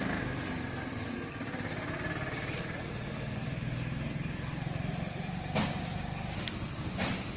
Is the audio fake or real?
fake